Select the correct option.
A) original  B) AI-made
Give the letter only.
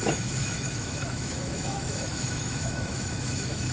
B